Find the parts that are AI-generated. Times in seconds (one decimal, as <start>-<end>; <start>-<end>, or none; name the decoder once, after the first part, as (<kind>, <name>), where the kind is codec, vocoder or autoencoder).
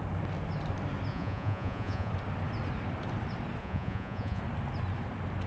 1.1-2.1 (vocoder, Vocos); 3.6-4.4